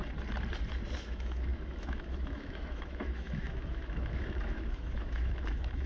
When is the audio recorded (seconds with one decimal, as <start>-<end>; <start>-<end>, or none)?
0.0-1.0